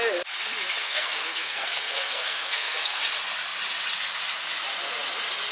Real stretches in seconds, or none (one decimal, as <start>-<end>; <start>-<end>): 0.0-0.8; 3.0-5.5